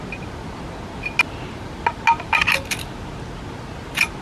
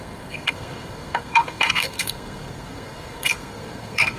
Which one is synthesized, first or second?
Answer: second